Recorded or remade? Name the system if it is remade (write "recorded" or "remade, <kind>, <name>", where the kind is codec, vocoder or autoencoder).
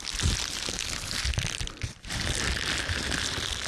remade, vocoder, BigVGAN v2